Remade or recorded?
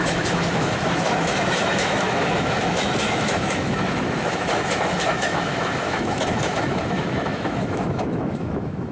remade